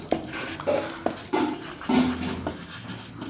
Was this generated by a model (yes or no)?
no